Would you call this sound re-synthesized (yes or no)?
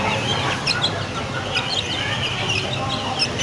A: no